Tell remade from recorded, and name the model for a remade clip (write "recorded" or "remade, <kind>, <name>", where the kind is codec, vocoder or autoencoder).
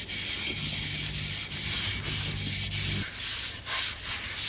recorded